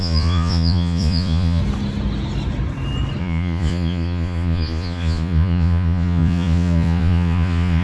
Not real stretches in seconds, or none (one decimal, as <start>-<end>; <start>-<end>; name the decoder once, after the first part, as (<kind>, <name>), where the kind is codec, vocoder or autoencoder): 0.0-1.6 (vocoder, Vocos); 3.2-7.8